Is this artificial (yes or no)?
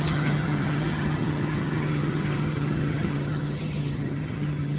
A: yes